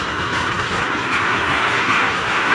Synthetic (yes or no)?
yes